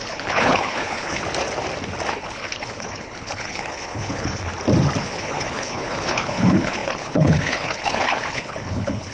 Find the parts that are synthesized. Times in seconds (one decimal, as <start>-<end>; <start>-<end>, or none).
0.0-1.2; 2.1-4.5; 5.0-9.1